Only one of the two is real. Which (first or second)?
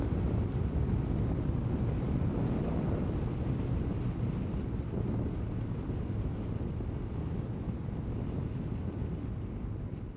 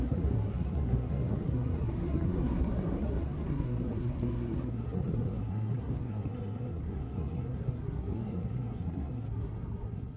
first